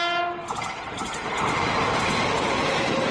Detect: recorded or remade recorded